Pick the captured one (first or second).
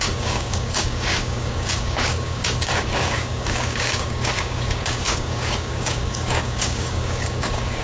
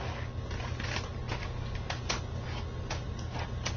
second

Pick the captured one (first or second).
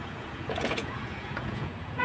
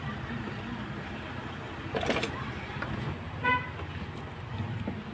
second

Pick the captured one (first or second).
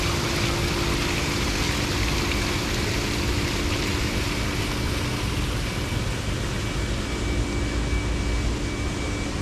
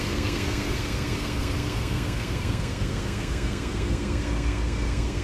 first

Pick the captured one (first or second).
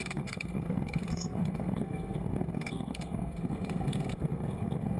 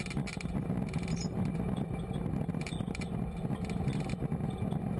second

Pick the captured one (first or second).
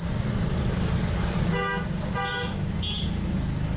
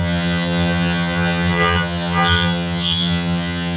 first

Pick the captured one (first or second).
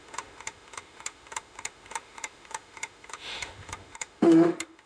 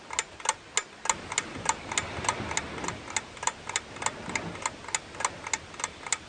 second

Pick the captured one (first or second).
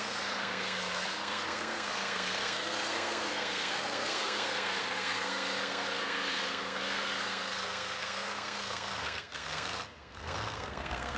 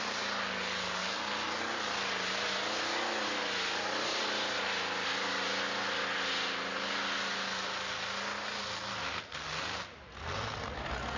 second